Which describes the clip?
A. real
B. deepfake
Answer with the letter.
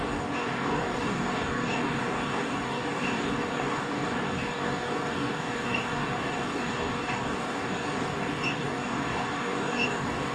B